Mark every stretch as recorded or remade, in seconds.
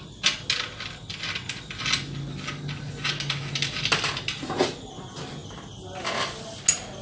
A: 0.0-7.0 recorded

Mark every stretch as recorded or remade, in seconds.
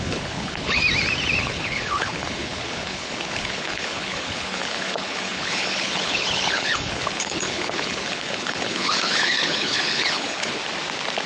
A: 0.0-0.8 remade; 0.8-1.4 recorded; 1.4-10.6 remade; 10.6-11.3 recorded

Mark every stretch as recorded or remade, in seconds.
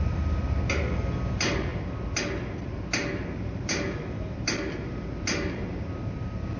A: 0.0-6.6 recorded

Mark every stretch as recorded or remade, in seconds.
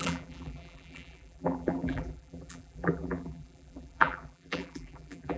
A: 0.0-5.4 remade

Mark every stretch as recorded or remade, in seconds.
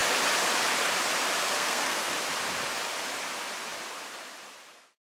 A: 0.0-1.4 recorded; 1.4-2.1 remade; 2.1-5.0 recorded